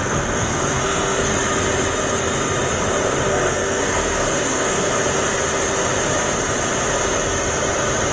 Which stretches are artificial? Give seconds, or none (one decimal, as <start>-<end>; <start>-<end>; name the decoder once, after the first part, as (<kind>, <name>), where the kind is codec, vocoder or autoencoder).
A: 0.0-1.3 (codec, SNAC); 3.3-4.9